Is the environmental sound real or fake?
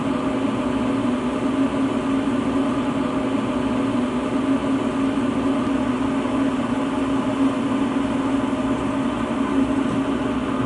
real